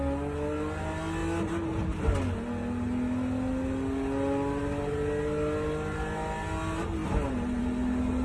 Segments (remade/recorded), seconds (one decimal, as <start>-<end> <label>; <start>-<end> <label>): 0.0-8.2 recorded